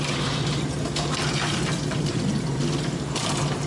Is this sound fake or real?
real